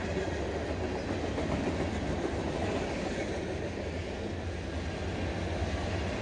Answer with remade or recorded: recorded